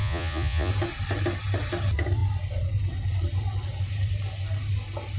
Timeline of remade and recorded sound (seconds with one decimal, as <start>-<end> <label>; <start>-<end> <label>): 0.0-0.7 remade; 0.7-5.2 recorded